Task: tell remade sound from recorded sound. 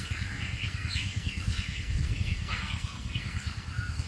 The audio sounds remade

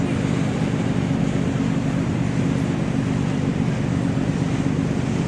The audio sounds recorded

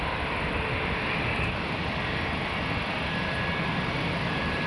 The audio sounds recorded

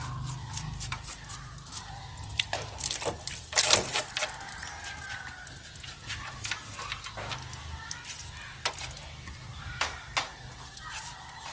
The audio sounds recorded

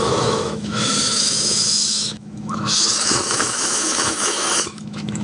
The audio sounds remade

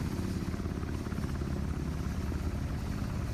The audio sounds recorded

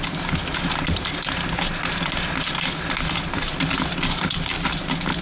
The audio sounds recorded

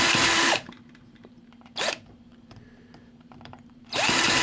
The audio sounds remade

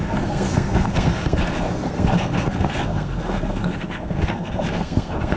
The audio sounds remade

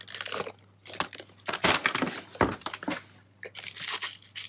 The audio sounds recorded